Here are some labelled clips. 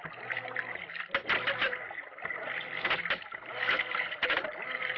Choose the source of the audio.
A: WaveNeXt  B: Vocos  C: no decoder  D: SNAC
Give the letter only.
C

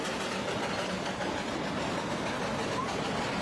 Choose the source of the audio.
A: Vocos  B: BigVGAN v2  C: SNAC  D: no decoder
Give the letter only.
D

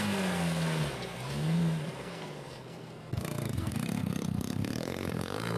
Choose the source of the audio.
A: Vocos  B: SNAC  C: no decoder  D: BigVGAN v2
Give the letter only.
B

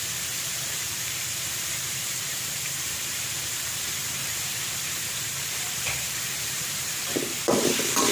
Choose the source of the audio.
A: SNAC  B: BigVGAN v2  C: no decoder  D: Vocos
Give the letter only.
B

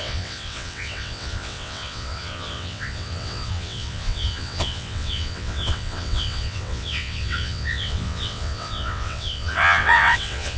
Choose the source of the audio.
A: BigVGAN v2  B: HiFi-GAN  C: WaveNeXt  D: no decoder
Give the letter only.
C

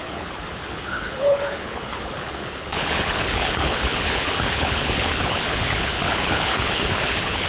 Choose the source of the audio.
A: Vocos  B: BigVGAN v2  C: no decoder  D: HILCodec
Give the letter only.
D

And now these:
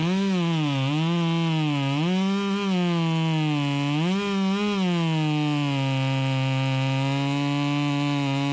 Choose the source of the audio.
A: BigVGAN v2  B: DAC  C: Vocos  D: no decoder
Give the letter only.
D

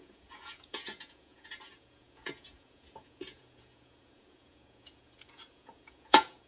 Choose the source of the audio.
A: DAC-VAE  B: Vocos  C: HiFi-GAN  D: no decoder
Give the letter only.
B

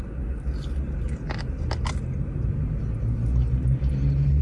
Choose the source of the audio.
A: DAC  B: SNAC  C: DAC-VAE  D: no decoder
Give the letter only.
D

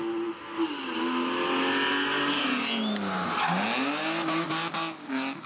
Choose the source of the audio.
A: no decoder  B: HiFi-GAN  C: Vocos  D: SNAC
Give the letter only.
A